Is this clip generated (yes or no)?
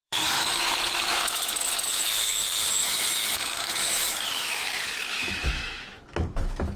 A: yes